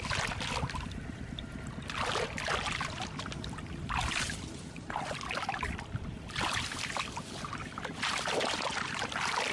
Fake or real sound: real